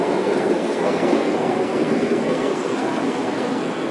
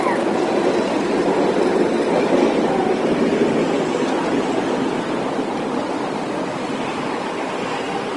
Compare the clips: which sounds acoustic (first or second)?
second